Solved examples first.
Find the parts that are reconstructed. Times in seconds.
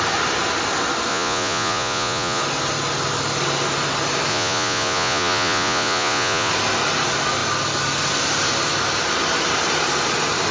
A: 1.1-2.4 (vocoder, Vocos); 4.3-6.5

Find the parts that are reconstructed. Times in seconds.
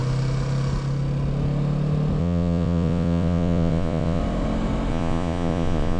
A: 2.2-4.2 (vocoder, Vocos); 4.9-6.0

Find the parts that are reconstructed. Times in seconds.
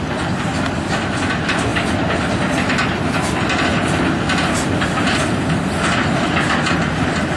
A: none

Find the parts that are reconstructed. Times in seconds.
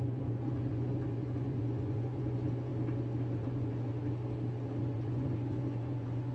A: 0.0-2.7 (vocoder, Vocos); 3.4-3.9; 4.8-6.3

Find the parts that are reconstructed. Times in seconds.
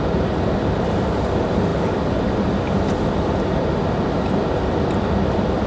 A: none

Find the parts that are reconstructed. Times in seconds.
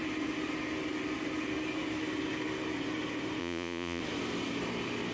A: 3.4-4.0 (vocoder, Vocos)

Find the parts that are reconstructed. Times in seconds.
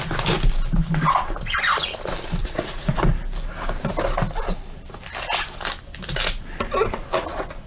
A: 2.4-3.0 (vocoder, Vocos)